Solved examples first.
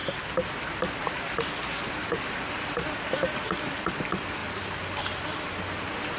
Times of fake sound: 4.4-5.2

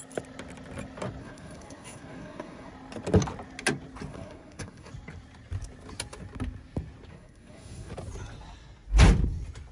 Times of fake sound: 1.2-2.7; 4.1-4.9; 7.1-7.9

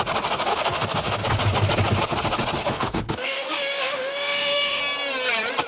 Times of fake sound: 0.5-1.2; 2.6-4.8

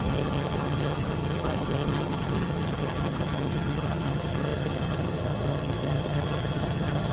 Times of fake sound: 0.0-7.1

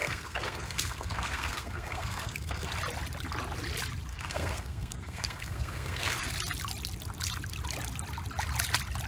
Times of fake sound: 0.0-2.7; 4.1-6.3

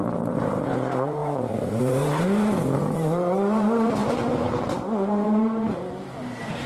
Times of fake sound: 0.0-6.7

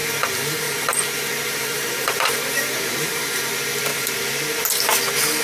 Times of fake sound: 0.0-3.2; 3.9-4.6